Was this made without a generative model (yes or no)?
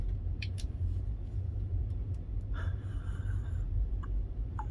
no